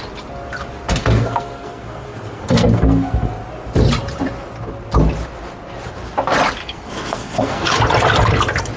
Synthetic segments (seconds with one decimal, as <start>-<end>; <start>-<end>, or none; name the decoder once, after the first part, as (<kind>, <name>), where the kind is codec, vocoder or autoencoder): 1.0-3.3 (codec, SNAC); 6.6-7.8